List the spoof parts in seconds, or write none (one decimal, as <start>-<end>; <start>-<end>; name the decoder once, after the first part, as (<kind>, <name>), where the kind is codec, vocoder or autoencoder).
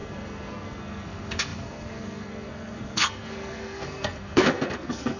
0.0-5.2 (codec, SNAC)